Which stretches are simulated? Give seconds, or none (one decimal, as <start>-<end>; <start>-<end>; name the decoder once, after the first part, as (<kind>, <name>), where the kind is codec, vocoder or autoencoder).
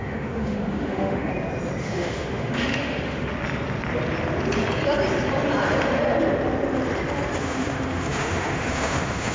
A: 0.0-1.3 (autoencoder, DAC-VAE); 1.8-3.3; 7.4-9.3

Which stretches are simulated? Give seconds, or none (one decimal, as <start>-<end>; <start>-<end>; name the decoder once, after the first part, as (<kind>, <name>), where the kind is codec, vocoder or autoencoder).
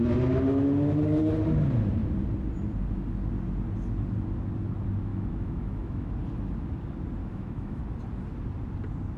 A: 5.1-6.1 (autoencoder, DAC-VAE); 7.2-7.8